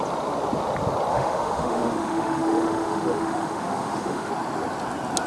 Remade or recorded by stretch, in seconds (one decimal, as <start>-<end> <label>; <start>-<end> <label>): 0.0-1.1 recorded; 1.1-4.3 remade; 4.3-5.3 recorded